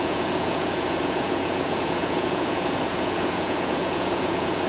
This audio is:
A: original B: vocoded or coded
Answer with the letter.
B